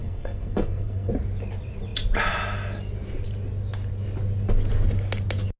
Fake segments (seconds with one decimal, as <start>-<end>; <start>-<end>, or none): 0.0-1.1